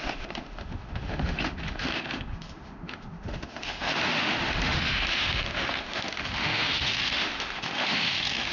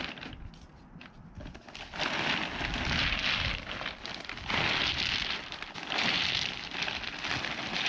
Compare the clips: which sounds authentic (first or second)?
second